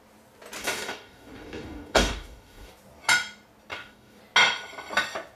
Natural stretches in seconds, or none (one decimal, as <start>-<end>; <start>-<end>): 0.0-0.6; 2.7-3.7; 4.2-5.4